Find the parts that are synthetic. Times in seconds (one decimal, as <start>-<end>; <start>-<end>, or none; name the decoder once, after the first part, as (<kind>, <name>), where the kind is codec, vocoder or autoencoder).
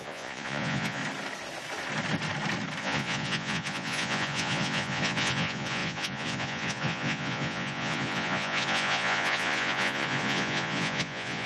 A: 0.0-1.0 (vocoder, Vocos); 2.8-11.5